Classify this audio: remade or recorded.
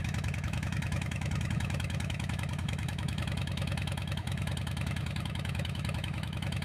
remade